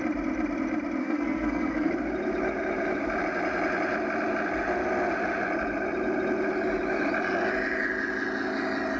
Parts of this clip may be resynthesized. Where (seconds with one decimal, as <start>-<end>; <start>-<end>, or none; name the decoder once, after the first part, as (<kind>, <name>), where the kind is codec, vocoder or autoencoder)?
1.0-1.9 (codec, SNAC)